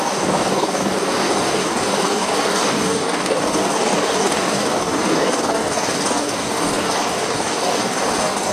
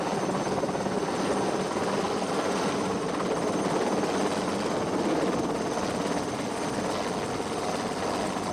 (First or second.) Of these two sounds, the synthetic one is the first